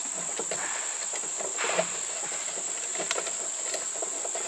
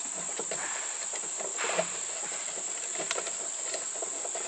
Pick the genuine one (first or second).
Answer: first